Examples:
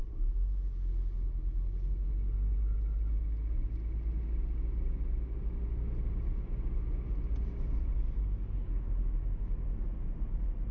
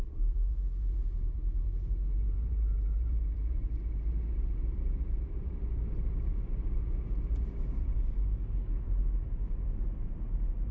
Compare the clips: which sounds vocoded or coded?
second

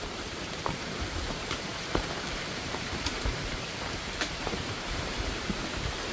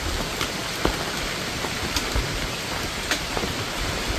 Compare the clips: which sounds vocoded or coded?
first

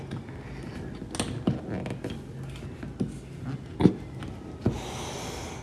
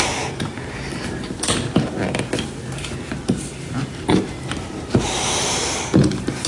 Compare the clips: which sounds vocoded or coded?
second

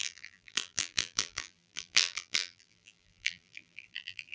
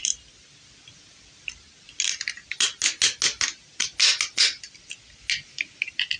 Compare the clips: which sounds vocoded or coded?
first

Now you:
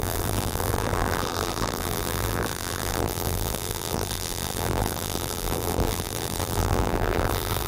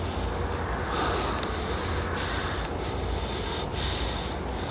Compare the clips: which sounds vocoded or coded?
first